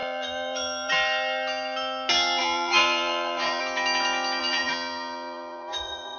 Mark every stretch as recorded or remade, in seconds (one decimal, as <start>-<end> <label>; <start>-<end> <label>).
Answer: 0.0-0.9 remade; 0.9-2.4 recorded; 2.4-3.6 remade; 3.6-4.4 recorded; 4.4-6.2 remade